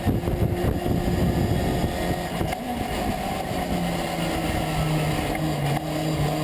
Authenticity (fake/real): real